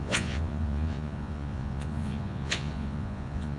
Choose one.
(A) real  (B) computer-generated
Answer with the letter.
B